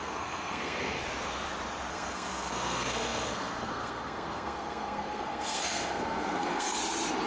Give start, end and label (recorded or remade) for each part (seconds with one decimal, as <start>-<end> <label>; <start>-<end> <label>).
0.0-1.0 remade; 1.0-1.9 recorded; 1.9-6.8 remade; 6.8-7.3 recorded